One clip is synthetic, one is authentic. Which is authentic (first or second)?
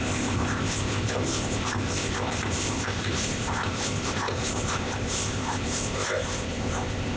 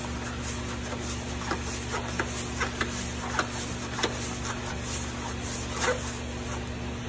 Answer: second